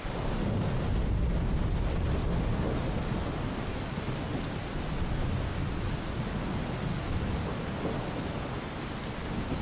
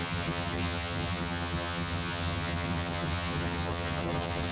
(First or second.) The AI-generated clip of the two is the second